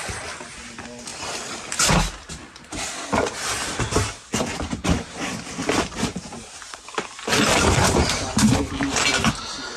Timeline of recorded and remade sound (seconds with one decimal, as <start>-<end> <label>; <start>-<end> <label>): 0.0-9.8 recorded

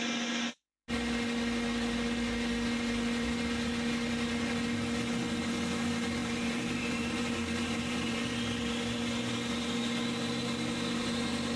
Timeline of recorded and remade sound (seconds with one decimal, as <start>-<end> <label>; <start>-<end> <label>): 0.0-6.2 recorded; 6.2-8.3 remade; 8.3-11.6 recorded

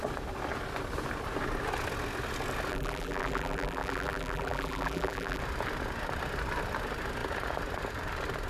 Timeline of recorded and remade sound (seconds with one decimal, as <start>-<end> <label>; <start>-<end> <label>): 0.0-2.7 recorded; 2.7-5.4 remade; 5.4-8.5 recorded

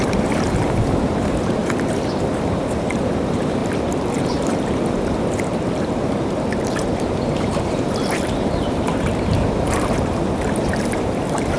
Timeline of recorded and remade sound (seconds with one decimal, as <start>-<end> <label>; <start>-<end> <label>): 0.0-1.6 remade; 1.6-2.2 recorded; 2.2-3.6 remade; 3.6-4.2 recorded; 4.2-11.6 remade

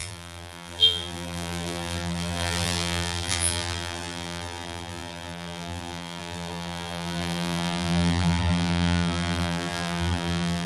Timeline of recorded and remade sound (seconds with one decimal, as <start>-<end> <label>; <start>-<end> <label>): 0.0-10.7 remade

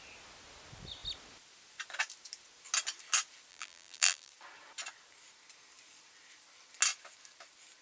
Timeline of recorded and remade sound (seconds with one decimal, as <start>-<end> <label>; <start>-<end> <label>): 0.0-3.5 recorded; 3.5-4.3 remade; 4.3-7.8 recorded

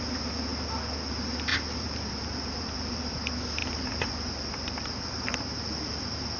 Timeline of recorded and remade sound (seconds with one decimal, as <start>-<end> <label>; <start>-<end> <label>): 0.0-1.5 recorded; 1.5-3.0 remade; 3.0-3.6 recorded; 3.6-5.4 remade; 5.4-6.4 recorded

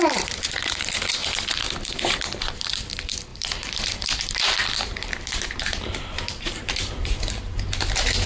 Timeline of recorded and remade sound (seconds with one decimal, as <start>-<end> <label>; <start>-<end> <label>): 0.0-1.2 remade; 1.2-2.6 recorded; 2.6-8.3 remade